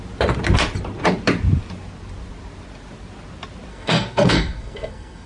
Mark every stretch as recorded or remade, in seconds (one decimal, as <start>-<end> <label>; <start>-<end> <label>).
0.0-3.7 recorded; 3.7-5.3 remade